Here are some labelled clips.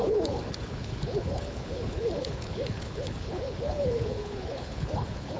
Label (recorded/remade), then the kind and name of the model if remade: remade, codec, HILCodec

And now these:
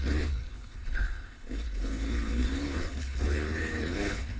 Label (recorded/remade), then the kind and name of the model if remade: remade, codec, HILCodec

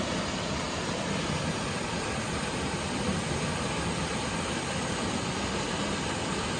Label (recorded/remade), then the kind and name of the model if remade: recorded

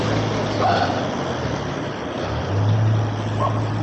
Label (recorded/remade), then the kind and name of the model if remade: recorded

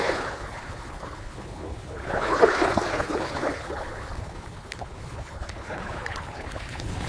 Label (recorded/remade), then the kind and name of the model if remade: remade, codec, HILCodec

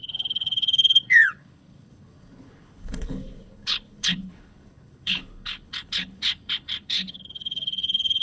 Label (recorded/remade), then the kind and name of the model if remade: remade, codec, HILCodec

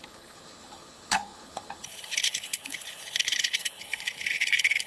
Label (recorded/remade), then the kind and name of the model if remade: remade, codec, HILCodec